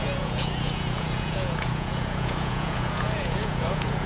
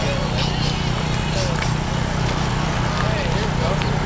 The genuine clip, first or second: second